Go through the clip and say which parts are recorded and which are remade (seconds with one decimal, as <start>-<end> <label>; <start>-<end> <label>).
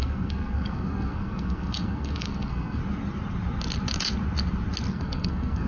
0.0-2.8 remade; 2.8-4.9 recorded; 4.9-5.7 remade